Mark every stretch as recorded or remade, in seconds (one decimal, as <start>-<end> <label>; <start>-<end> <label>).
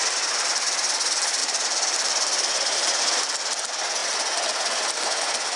0.0-5.6 recorded